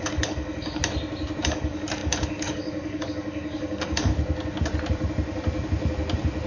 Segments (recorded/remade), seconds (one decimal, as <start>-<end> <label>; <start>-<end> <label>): 0.0-0.8 remade; 0.8-1.4 recorded; 1.4-4.1 remade; 4.1-6.5 recorded